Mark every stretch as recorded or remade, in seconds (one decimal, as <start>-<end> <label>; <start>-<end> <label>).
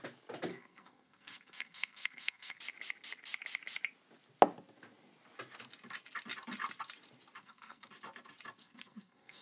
0.0-0.5 recorded; 0.5-2.6 remade; 2.6-7.4 recorded; 7.4-7.9 remade; 7.9-8.6 recorded; 8.6-9.4 remade